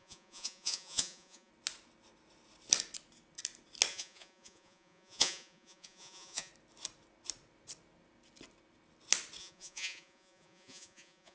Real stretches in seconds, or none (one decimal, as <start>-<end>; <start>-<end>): 1.5-3.9; 6.5-9.4